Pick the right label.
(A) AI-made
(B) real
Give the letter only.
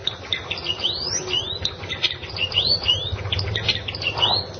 B